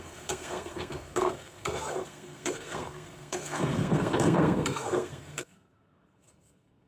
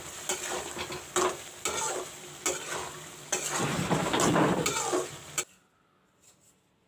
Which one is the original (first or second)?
second